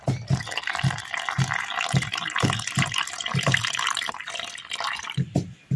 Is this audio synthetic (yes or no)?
no